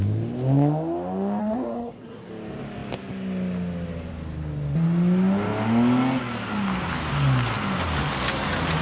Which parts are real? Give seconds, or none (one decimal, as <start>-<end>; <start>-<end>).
0.0-1.4; 2.3-8.8